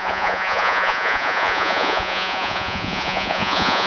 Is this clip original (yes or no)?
no